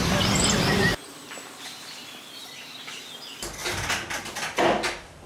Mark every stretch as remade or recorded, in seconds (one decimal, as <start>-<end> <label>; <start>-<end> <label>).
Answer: 0.0-2.4 recorded; 2.4-3.0 remade; 3.0-5.3 recorded